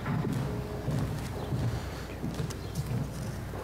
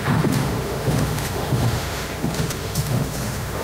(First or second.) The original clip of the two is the first